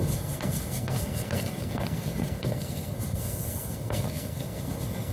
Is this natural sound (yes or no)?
no